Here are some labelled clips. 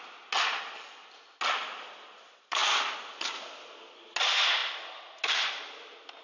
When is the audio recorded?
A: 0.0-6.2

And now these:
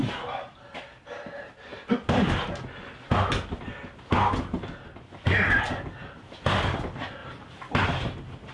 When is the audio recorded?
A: 0.0-8.5

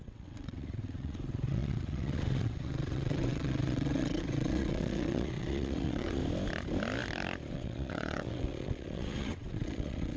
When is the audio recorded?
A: 6.2-7.5